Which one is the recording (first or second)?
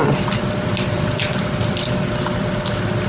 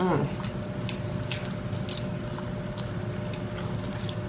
second